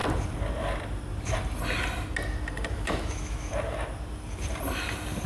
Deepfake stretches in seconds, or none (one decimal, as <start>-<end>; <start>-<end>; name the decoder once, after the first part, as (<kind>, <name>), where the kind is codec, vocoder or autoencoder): 2.7-3.5 (autoencoder, DAC-VAE)